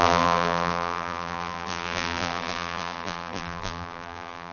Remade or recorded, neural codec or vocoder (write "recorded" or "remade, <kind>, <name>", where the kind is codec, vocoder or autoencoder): remade, vocoder, BigVGAN v2